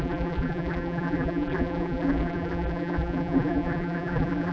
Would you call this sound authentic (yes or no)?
no